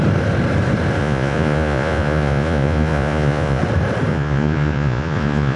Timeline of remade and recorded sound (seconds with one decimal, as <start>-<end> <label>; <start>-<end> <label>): 0.0-1.0 recorded; 1.0-3.6 remade; 3.6-4.1 recorded; 4.1-5.6 remade